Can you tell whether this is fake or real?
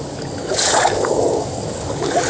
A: fake